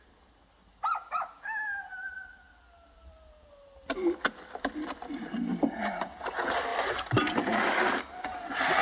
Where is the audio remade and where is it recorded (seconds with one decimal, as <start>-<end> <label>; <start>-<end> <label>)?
0.0-6.7 recorded; 6.7-8.0 remade; 8.0-8.8 recorded